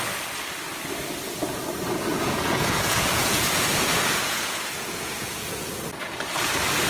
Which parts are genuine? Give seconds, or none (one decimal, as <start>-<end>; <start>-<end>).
0.0-2.1; 5.7-6.9